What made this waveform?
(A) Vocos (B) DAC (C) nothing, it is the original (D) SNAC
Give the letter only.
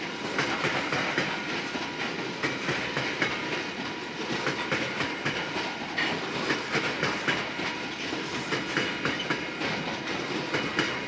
C